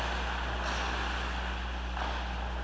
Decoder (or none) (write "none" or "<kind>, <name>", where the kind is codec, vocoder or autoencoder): none